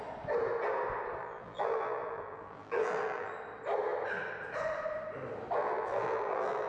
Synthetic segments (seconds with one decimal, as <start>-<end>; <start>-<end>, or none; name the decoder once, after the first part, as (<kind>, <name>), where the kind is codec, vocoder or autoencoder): 1.2-3.3 (vocoder, BigVGAN v2); 5.6-6.7

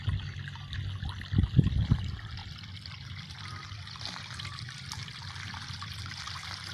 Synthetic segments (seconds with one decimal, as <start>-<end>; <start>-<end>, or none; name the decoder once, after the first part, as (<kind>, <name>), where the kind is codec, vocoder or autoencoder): 2.4-6.1 (vocoder, BigVGAN v2)